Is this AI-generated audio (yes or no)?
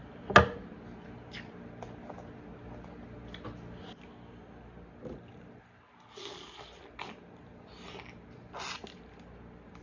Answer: no